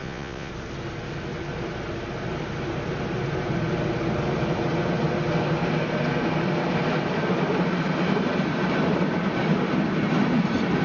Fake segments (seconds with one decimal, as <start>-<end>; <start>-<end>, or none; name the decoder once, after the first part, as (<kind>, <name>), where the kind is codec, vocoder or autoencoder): 0.0-0.5 (vocoder, Vocos)